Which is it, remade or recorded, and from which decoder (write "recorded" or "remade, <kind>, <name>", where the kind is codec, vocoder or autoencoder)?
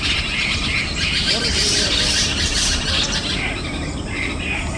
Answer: recorded